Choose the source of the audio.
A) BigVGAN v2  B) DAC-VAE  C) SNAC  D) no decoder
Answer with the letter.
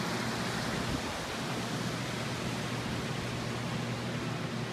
D